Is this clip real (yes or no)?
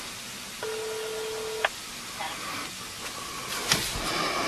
yes